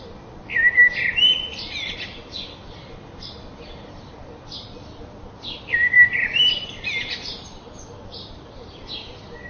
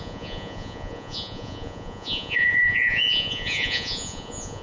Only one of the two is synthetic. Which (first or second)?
second